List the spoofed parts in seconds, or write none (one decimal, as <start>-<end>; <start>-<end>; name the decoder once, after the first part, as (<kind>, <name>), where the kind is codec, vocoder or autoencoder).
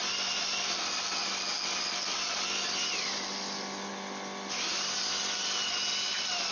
none